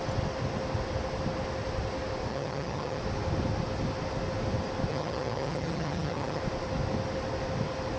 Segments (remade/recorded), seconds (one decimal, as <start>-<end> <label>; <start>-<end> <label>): 0.0-2.3 recorded; 2.3-3.0 remade; 3.0-4.9 recorded; 4.9-6.4 remade; 6.4-8.0 recorded